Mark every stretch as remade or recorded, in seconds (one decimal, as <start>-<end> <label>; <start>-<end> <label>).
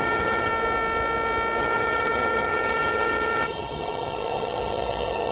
0.0-0.5 remade; 0.5-1.6 recorded; 1.6-5.3 remade